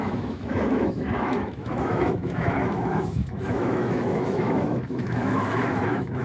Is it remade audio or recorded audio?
remade